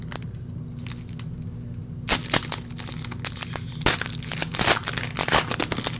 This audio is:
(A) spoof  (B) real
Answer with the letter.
B